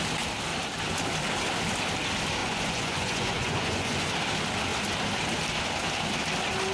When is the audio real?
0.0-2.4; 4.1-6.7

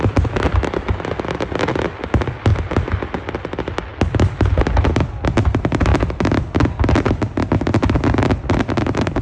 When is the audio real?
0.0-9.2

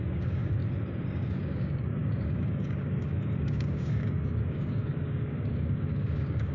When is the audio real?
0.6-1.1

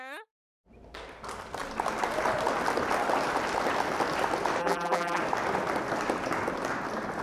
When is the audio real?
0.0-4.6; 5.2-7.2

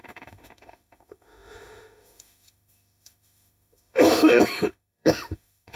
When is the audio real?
none

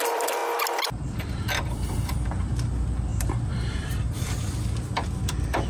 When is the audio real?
0.4-1.2

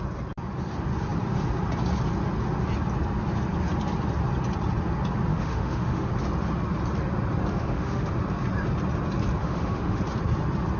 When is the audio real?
0.0-5.3; 6.1-7.5; 8.1-9.4; 10.0-10.8

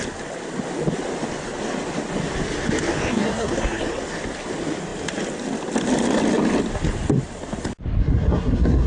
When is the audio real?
0.0-3.1; 3.8-8.0